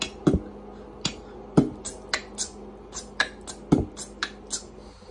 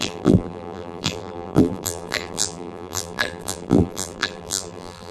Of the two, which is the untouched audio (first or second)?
first